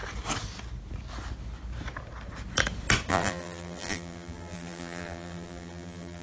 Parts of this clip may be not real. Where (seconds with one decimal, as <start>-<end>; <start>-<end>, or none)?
3.1-6.2